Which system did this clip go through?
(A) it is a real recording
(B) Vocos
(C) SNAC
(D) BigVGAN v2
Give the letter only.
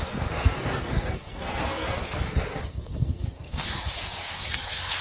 C